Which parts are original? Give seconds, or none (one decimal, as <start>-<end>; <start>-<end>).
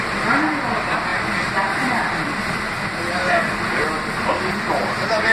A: 0.0-1.1; 3.5-5.3